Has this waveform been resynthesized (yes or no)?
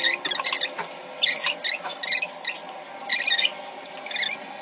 no